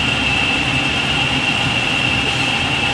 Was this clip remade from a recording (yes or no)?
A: no